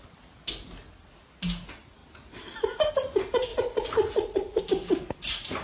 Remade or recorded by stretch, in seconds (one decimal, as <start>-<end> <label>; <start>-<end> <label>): 0.0-3.5 recorded; 3.5-4.6 remade; 4.6-5.6 recorded